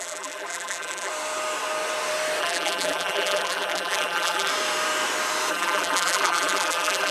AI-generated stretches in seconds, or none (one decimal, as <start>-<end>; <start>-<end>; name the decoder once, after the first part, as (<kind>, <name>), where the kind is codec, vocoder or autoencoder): 0.0-1.1 (vocoder, BigVGAN v2); 2.4-4.5; 5.5-7.1